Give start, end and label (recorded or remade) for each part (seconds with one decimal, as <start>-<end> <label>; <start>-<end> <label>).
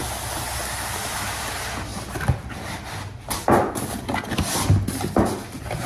0.0-5.9 recorded